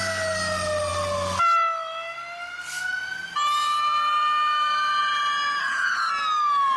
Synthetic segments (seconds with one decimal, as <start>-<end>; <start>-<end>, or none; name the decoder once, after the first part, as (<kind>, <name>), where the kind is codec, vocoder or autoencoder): 5.6-6.1 (codec, HILCodec)